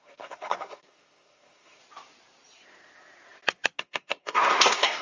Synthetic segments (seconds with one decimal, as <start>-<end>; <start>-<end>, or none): 0.0-1.8; 3.8-5.0